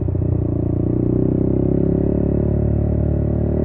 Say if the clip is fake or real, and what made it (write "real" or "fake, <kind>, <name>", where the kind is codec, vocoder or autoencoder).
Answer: real